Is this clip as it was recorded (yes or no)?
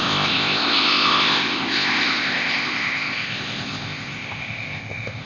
no